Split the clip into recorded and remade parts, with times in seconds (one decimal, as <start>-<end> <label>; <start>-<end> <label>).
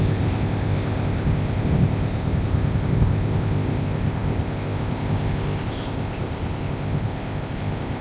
0.0-8.0 remade